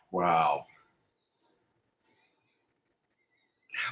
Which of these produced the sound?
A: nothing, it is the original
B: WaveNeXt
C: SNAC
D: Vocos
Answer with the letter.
A